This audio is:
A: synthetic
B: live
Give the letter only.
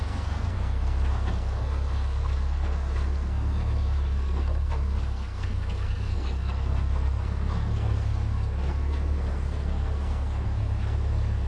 A